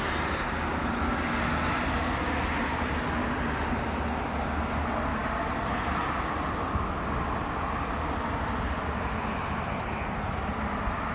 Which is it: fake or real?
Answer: real